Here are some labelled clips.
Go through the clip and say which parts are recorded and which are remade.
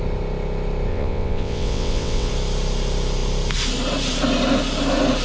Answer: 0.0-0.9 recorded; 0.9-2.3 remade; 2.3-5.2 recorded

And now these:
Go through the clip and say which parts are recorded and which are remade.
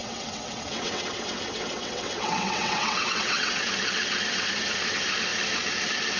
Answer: 0.0-3.7 remade; 3.7-6.2 recorded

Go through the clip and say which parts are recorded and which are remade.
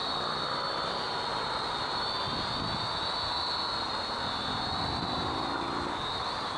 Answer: 0.0-6.6 recorded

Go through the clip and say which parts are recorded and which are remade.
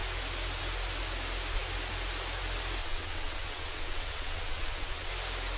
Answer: 0.0-2.8 recorded; 2.8-5.1 remade; 5.1-5.6 recorded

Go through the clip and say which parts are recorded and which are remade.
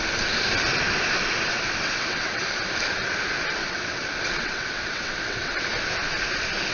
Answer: 0.0-1.5 recorded; 1.5-2.4 remade; 2.4-3.6 recorded; 3.6-5.6 remade; 5.6-6.7 recorded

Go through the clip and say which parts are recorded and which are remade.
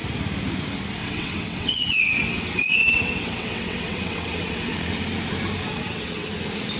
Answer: 0.0-1.0 recorded; 1.0-5.0 remade; 5.0-5.7 recorded; 5.7-6.3 remade; 6.3-6.8 recorded